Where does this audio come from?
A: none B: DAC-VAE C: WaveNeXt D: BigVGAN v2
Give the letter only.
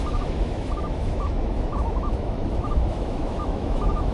B